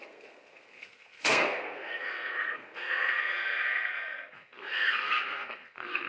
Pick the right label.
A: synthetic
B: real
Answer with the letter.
A